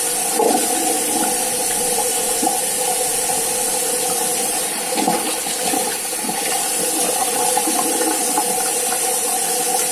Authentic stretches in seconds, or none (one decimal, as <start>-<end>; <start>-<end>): 0.0-4.3; 5.2-9.9